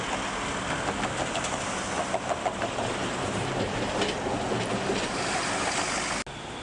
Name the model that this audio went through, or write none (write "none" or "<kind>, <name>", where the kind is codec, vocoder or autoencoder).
none